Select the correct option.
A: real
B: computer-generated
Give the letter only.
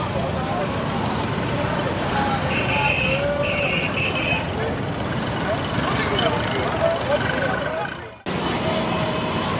A